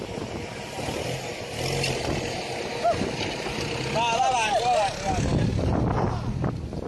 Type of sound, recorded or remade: recorded